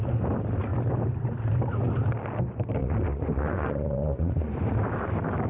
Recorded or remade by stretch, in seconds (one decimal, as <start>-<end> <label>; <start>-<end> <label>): 0.0-2.8 recorded; 2.8-4.5 remade; 4.5-5.5 recorded